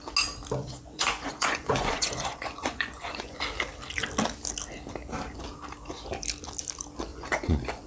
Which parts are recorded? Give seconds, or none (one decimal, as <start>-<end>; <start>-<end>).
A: 0.0-0.6; 3.4-7.1